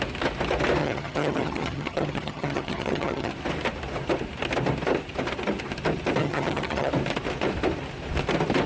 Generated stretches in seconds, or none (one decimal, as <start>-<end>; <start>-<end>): 0.8-3.3; 6.2-6.9